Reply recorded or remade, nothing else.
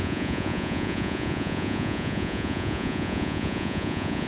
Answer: remade